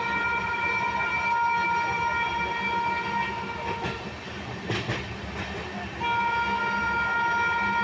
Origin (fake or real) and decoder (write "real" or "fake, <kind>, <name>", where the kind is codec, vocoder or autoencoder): real